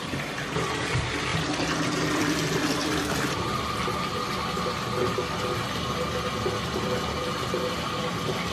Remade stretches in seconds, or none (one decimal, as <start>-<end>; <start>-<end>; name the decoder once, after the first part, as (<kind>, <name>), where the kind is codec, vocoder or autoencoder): 1.3-3.6 (vocoder, BigVGAN v2)